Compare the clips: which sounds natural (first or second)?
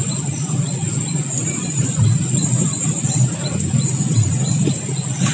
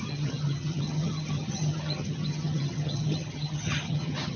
first